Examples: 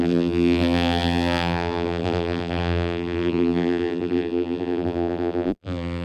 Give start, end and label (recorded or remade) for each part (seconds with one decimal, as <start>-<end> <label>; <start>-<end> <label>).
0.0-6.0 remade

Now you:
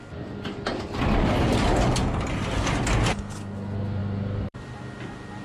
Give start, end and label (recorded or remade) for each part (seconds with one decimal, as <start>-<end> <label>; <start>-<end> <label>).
0.0-5.4 recorded

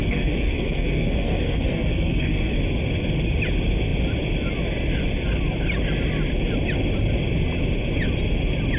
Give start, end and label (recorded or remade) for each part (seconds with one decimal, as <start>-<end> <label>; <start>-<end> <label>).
0.0-2.6 remade; 2.6-8.8 recorded